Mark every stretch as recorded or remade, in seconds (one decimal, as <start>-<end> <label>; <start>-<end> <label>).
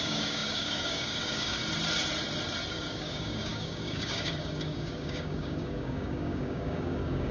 0.0-1.6 remade; 1.6-2.7 recorded; 2.7-7.3 remade